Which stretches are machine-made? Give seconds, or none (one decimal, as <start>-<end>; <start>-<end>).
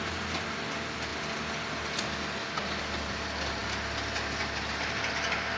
none